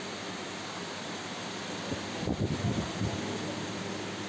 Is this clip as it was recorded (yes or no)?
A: yes